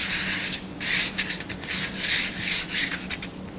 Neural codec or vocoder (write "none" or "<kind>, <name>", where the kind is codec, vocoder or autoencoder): none